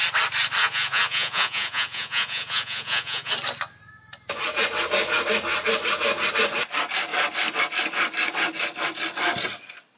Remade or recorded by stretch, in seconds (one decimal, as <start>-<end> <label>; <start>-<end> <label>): 0.0-0.6 recorded; 0.6-3.3 remade; 3.3-10.0 recorded